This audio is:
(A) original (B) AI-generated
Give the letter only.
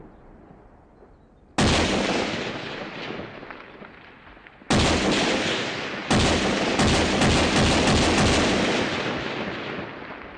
A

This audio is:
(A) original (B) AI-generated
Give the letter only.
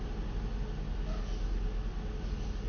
A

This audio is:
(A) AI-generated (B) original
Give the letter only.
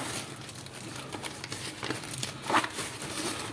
B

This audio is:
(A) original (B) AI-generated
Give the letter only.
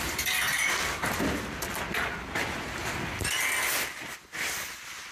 A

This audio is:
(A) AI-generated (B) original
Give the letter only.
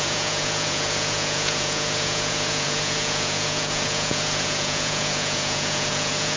A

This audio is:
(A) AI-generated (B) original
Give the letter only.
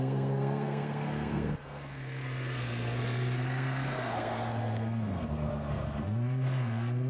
A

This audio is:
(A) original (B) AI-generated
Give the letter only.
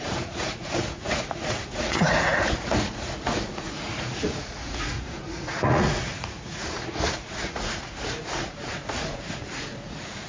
B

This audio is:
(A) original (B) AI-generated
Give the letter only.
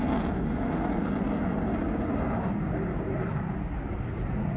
A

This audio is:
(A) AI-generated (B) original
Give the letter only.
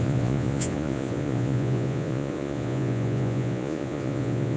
A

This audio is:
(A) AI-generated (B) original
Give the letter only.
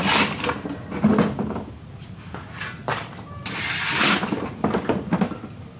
B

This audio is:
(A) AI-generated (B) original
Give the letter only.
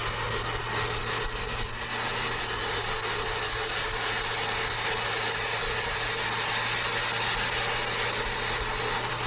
B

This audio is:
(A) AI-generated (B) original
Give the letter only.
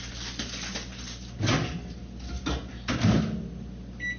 B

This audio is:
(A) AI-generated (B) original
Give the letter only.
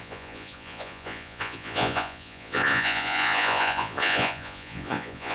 A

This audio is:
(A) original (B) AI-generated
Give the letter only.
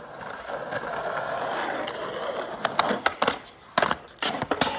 A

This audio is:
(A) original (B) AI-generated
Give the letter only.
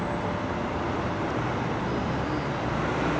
A